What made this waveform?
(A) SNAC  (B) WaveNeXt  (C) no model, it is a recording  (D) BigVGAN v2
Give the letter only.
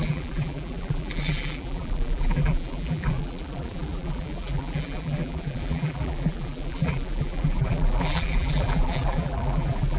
D